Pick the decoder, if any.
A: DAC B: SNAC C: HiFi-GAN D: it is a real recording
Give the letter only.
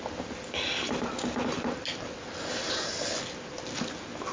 D